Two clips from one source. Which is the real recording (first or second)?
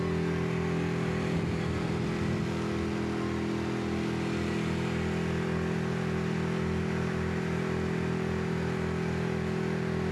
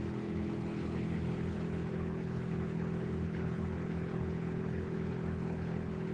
first